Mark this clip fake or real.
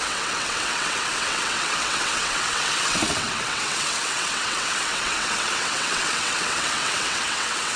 fake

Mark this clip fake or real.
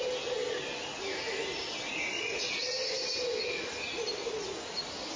real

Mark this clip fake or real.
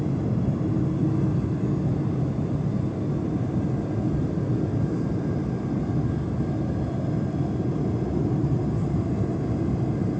real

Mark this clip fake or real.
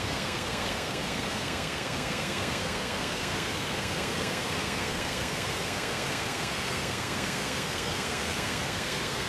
fake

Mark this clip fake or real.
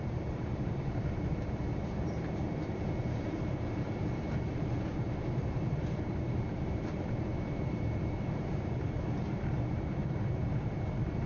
fake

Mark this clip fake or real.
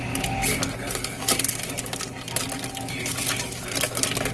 real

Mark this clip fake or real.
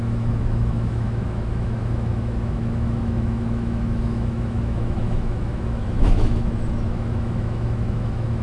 fake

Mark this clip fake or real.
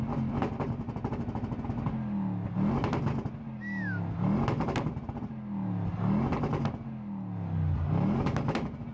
real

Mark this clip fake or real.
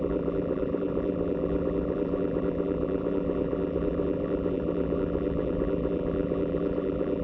fake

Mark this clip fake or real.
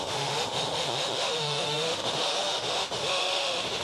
fake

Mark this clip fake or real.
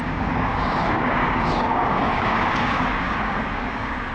fake